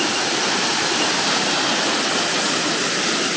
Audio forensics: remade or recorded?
recorded